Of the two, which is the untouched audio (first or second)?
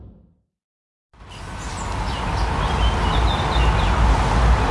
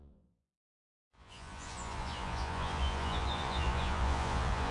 first